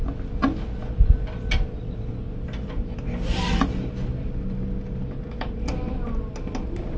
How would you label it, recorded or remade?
recorded